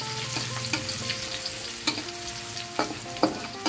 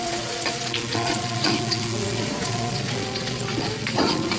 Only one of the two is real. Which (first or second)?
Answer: first